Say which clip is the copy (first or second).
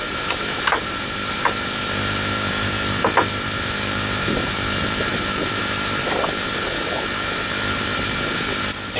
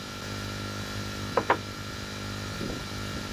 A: first